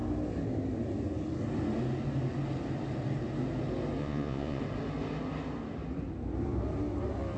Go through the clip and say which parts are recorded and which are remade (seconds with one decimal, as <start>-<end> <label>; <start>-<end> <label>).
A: 0.0-4.0 recorded; 4.0-4.6 remade; 4.6-7.4 recorded